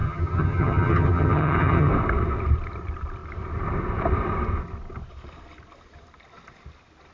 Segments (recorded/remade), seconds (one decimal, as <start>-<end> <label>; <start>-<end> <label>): 0.0-1.9 remade; 1.9-7.1 recorded